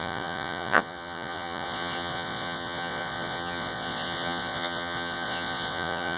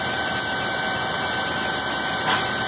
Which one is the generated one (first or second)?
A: first